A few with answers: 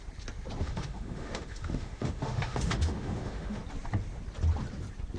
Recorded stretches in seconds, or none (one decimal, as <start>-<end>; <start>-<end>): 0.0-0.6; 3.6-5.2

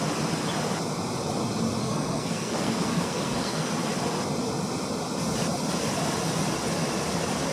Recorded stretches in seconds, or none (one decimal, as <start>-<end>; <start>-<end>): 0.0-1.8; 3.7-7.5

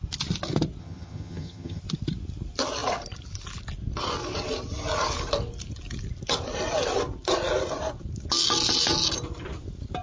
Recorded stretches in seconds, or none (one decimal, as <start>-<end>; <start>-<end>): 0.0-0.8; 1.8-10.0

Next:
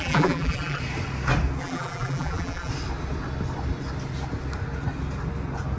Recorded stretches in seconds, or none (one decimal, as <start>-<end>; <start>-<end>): 0.8-1.6; 2.7-5.8

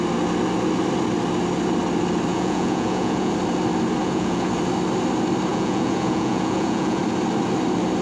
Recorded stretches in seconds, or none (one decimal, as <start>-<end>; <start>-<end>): 0.0-2.3; 3.3-4.0; 4.5-5.5; 7.0-8.0

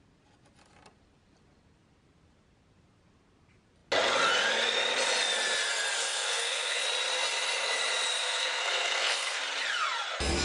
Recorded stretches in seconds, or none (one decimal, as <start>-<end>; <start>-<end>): 0.0-6.0; 6.8-8.2; 9.4-10.4

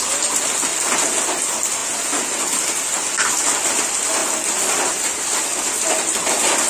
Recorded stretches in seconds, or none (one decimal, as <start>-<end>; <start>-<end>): 0.0-6.7